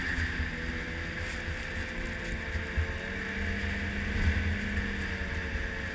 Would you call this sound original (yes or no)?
yes